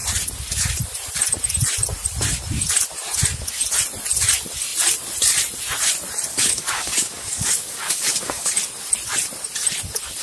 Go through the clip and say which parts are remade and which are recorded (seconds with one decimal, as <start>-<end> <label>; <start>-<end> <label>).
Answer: 0.0-6.3 recorded; 6.3-8.5 remade; 8.5-10.2 recorded